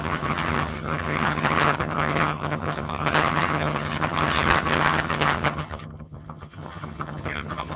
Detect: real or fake fake